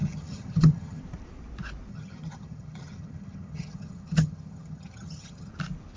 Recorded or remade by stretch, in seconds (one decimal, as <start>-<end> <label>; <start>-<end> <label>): 0.0-1.0 remade; 1.0-1.9 recorded; 1.9-5.5 remade; 5.5-6.0 recorded